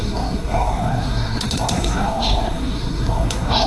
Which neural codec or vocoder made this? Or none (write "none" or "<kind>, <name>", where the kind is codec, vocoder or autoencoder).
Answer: codec, SNAC